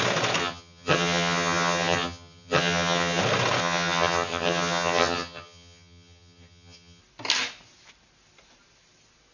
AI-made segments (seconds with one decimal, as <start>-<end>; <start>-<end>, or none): 0.4-3.2; 3.6-7.0